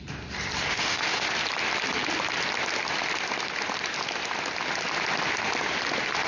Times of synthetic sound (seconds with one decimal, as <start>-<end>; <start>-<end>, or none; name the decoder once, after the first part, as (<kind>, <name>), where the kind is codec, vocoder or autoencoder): 0.7-1.3 (autoencoder, DAC-VAE)